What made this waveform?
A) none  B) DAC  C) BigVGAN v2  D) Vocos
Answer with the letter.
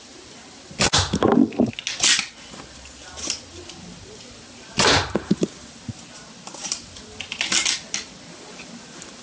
A